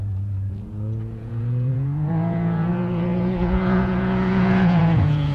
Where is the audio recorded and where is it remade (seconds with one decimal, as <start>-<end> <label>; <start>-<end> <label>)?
0.0-5.3 remade